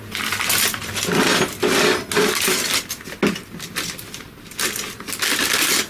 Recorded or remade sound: recorded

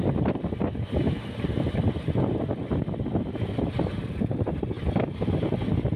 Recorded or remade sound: recorded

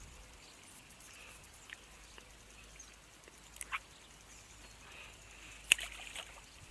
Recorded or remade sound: recorded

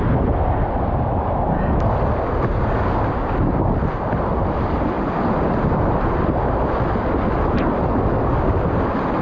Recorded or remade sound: recorded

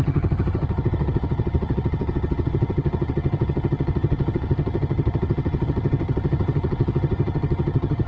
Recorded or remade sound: remade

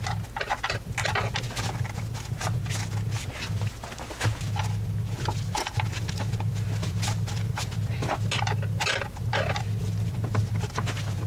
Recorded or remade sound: recorded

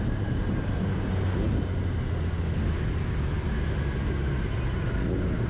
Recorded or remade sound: recorded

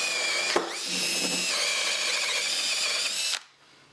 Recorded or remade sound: recorded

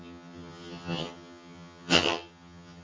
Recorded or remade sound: remade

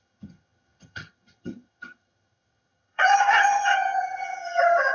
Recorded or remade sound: remade